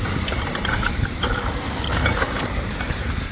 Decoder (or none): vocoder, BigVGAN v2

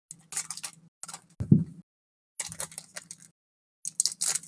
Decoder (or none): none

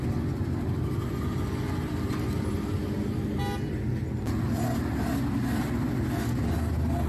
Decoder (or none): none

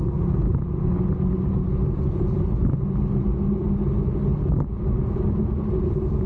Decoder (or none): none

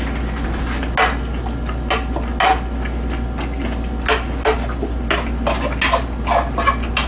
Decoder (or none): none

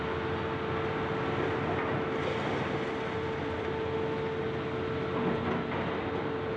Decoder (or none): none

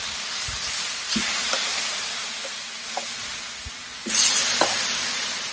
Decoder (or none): none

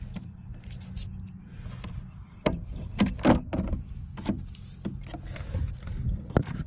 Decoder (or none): none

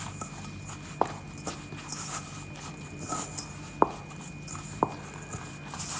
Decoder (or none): none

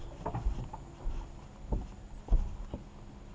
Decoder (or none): none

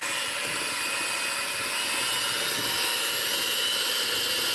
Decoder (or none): none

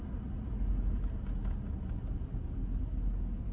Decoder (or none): none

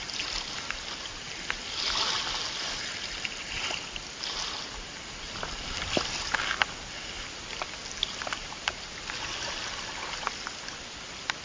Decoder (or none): none